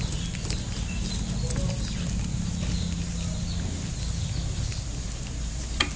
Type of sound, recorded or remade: recorded